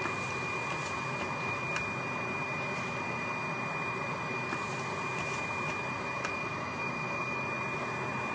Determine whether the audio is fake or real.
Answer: real